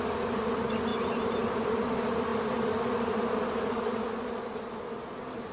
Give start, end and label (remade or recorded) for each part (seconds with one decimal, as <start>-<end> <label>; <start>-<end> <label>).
0.0-0.9 recorded; 0.9-1.4 remade; 1.4-5.5 recorded